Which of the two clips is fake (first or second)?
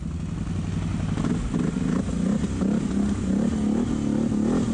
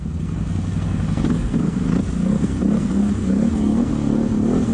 second